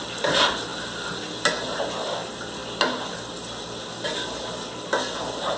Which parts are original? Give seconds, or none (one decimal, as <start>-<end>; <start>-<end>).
0.0-5.6